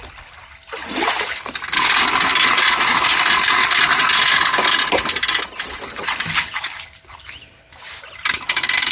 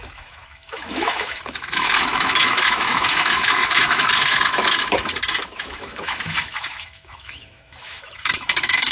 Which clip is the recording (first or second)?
first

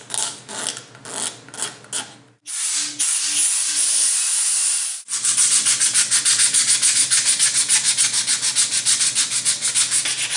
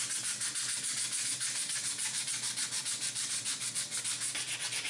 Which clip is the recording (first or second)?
first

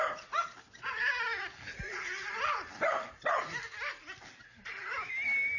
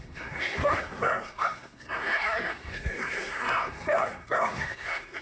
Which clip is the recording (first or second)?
first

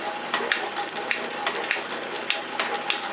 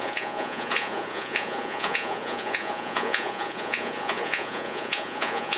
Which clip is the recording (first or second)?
first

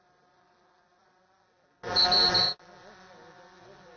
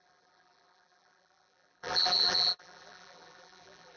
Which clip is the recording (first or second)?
first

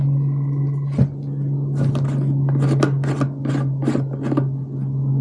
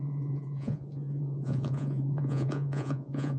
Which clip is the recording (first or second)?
first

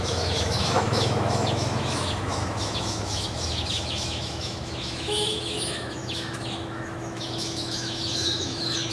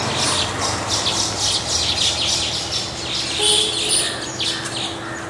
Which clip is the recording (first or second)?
second